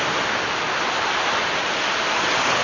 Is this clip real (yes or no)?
yes